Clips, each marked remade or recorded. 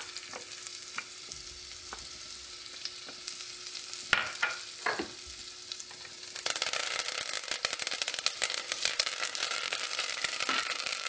recorded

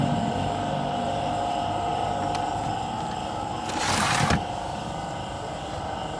remade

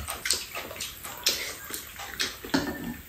recorded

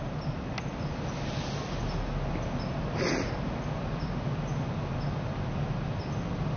recorded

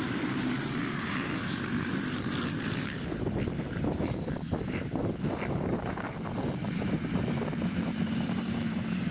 remade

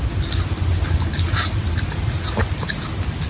recorded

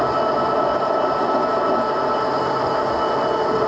recorded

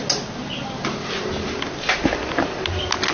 recorded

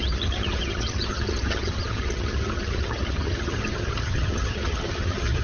remade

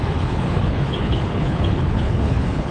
remade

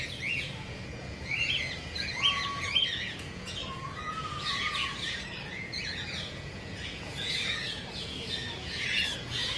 remade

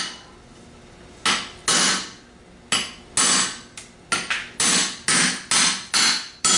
recorded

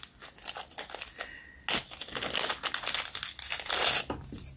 recorded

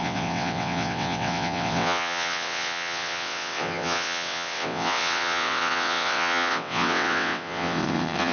remade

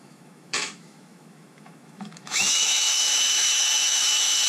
remade